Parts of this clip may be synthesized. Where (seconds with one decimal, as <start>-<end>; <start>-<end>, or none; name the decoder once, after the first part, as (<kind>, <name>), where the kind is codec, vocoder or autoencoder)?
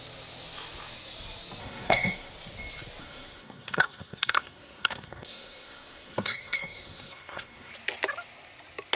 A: 1.6-2.3 (codec, SNAC); 3.0-7.7